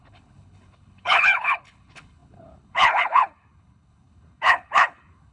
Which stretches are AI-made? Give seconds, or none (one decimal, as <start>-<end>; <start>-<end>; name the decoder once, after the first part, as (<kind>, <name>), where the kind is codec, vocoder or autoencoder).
0.0-5.3 (codec, HILCodec)